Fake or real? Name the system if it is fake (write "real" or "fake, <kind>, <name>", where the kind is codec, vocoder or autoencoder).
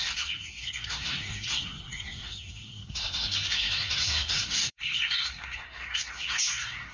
fake, codec, SNAC